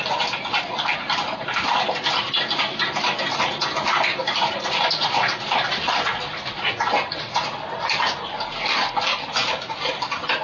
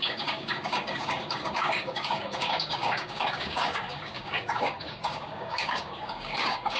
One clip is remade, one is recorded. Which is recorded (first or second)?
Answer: first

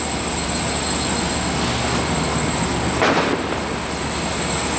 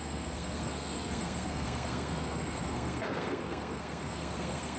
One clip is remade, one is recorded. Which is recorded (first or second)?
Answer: first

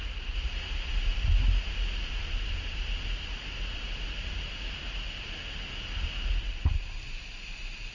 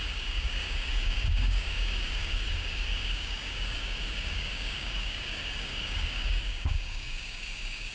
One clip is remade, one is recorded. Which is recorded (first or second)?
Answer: first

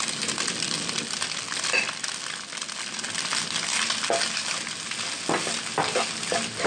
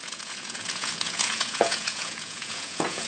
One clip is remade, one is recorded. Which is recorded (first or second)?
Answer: first